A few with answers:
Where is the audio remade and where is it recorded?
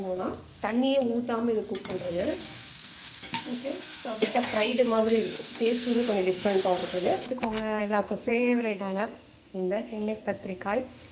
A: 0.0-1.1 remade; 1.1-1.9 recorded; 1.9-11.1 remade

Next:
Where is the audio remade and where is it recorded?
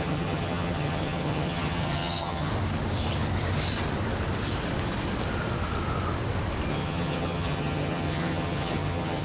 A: 0.0-2.5 remade; 2.5-6.7 recorded; 6.7-9.2 remade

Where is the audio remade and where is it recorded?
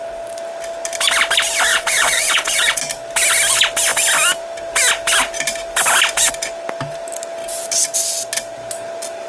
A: 0.0-1.7 recorded; 1.7-2.8 remade; 2.8-9.3 recorded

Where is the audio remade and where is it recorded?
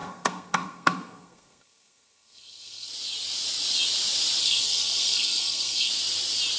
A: 0.0-2.9 remade; 2.9-4.4 recorded; 4.4-5.9 remade; 5.9-6.6 recorded